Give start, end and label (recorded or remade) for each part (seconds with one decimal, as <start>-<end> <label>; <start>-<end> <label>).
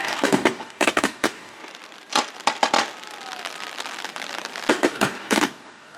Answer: 0.0-1.6 remade; 1.6-4.7 recorded; 4.7-6.0 remade